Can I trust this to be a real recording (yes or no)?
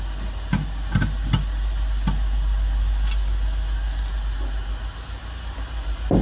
yes